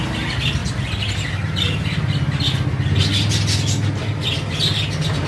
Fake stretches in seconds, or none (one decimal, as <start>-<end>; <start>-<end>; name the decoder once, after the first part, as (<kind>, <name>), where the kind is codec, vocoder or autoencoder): none